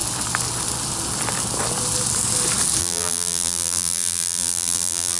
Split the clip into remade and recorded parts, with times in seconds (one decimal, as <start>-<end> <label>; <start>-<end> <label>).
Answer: 0.0-2.8 recorded; 2.8-5.2 remade